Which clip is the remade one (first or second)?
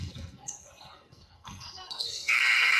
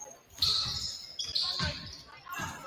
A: first